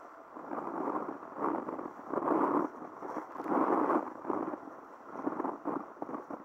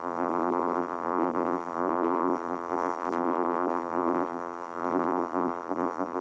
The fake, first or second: second